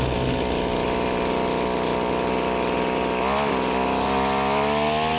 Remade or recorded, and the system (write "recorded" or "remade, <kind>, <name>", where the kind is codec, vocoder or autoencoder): recorded